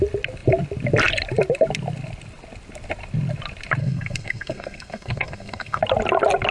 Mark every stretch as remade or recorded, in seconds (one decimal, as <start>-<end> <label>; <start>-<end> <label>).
0.0-3.8 recorded; 3.8-5.8 remade; 5.8-6.5 recorded